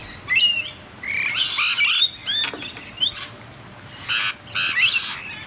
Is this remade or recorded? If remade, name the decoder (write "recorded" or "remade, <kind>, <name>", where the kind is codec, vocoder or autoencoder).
recorded